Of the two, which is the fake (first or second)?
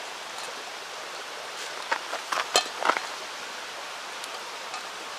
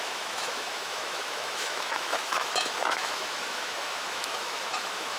second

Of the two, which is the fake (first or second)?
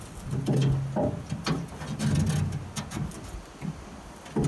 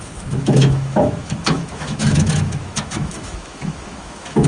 second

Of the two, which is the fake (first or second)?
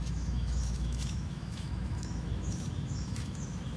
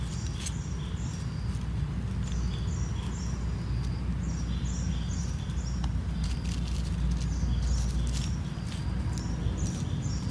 first